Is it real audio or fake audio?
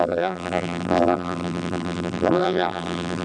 fake